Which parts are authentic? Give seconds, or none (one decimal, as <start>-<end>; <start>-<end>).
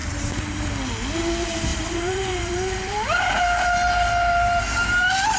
0.7-1.7; 4.6-5.4